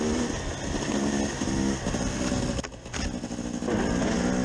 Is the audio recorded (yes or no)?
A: yes